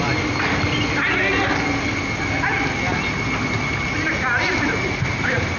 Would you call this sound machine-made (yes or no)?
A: no